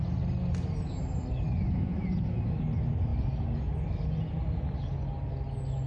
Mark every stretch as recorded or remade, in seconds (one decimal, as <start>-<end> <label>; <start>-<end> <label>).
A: 0.0-5.9 recorded